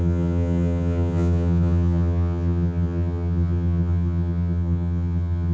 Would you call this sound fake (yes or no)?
yes